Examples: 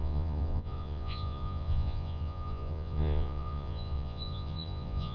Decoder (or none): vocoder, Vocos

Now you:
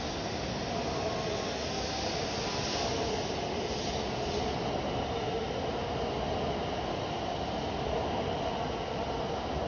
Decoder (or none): none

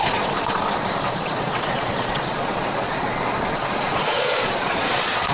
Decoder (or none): vocoder, Vocos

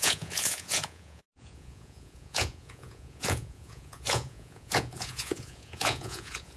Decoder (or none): vocoder, Vocos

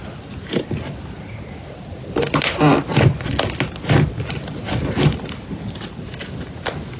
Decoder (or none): none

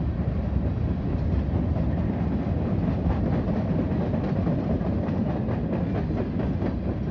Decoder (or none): none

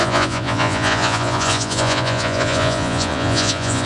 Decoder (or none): vocoder, Vocos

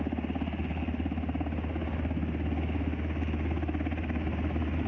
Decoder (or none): none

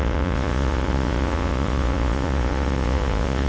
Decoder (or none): vocoder, Vocos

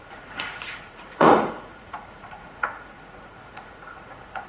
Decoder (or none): vocoder, Vocos